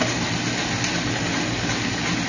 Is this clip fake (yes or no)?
no